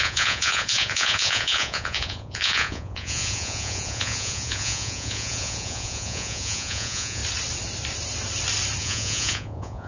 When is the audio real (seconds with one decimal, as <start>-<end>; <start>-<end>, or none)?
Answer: 7.2-8.8